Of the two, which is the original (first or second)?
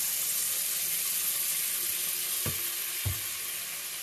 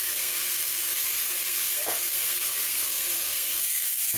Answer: first